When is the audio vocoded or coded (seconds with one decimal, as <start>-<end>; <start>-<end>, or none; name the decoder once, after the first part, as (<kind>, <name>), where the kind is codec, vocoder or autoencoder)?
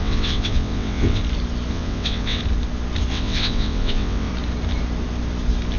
0.0-1.2 (vocoder, WaveNeXt); 1.7-2.4; 3.1-4.3